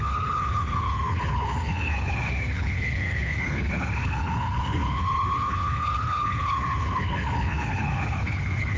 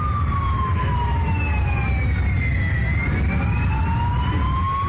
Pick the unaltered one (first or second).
second